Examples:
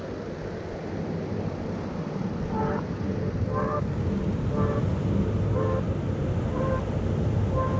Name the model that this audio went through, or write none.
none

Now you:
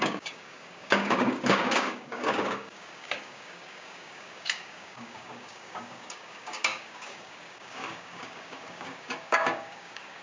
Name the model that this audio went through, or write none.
codec, DAC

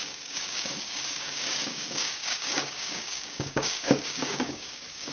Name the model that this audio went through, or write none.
codec, DAC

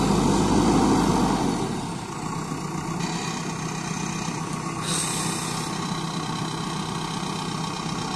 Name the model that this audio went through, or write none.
none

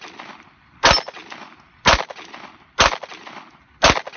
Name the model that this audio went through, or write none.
none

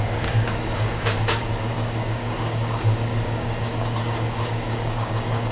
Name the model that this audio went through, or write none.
codec, DAC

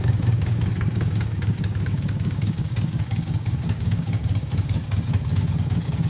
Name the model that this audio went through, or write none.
codec, DAC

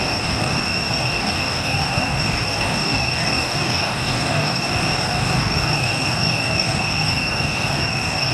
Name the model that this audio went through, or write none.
codec, DAC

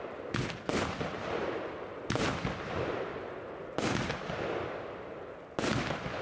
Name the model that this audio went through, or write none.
none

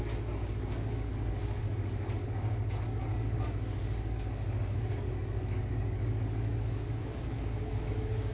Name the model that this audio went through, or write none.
codec, DAC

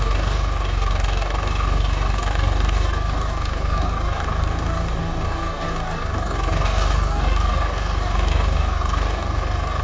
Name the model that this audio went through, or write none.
codec, DAC